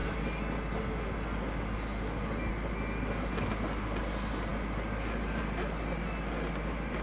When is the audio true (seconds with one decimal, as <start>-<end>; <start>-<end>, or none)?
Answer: 0.0-7.0